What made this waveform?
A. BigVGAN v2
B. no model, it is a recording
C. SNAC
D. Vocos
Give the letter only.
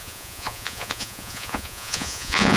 D